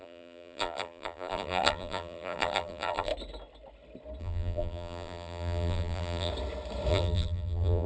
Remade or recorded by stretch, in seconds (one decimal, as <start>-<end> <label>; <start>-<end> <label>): 0.0-3.1 remade; 3.1-4.2 recorded; 4.2-6.3 remade; 6.3-6.9 recorded; 6.9-7.9 remade